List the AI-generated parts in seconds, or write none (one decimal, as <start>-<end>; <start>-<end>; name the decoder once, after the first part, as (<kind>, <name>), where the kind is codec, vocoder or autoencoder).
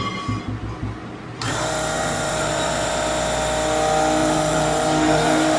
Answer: 1.0-2.9 (vocoder, BigVGAN v2); 4.2-5.6